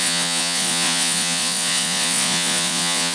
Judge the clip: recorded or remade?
remade